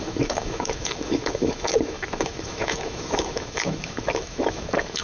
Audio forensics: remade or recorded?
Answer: remade